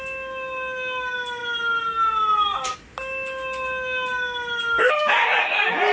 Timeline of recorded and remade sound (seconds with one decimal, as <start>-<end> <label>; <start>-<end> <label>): 0.0-5.9 recorded